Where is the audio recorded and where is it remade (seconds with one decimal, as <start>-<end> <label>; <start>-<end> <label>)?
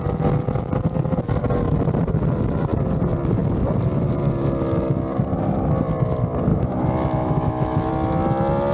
0.0-6.5 recorded; 6.5-7.9 remade; 7.9-8.7 recorded